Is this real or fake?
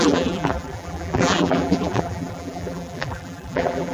fake